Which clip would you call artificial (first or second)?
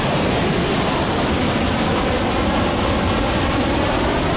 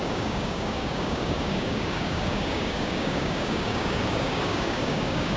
second